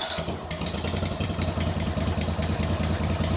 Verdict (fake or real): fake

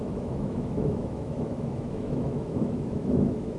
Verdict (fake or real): fake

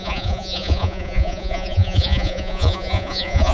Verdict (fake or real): fake